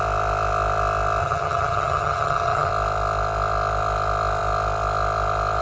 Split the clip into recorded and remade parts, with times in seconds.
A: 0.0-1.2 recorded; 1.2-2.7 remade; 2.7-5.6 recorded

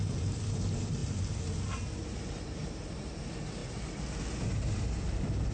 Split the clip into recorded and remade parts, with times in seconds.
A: 0.0-1.0 remade; 1.0-2.9 recorded; 2.9-3.6 remade; 3.6-5.0 recorded; 5.0-5.5 remade